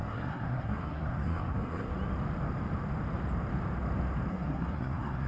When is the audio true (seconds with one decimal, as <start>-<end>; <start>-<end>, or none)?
1.9-4.3